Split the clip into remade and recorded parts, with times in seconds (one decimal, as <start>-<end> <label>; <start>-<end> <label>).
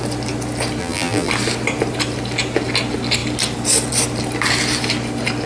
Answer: 0.0-0.8 recorded; 0.8-1.3 remade; 1.3-5.5 recorded